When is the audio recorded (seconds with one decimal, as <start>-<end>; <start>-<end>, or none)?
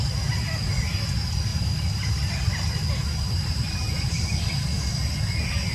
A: 0.0-1.5; 2.3-3.0; 3.7-5.7